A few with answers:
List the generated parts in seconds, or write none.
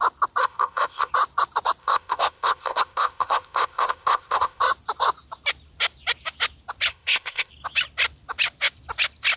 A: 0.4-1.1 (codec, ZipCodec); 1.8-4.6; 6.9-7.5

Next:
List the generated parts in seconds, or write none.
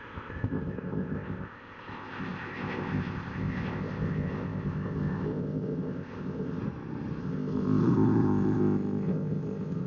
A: 0.0-6.6 (codec, ZipCodec); 7.2-9.9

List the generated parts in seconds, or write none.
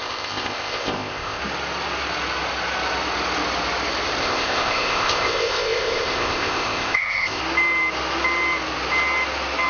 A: 0.0-1.4 (codec, ZipCodec); 4.2-7.4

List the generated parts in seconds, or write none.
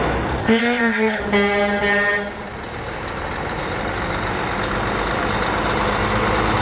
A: 0.4-1.2 (codec, ZipCodec)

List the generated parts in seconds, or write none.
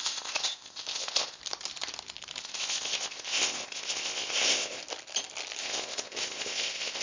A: 0.0-1.4 (codec, ZipCodec); 2.4-4.8; 5.6-7.0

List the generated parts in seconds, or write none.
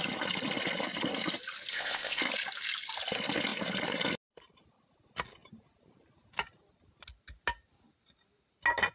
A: 1.7-2.2 (codec, ZipCodec)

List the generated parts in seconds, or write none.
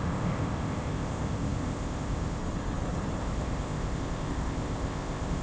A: 0.0-2.4 (codec, ZipCodec); 3.2-5.4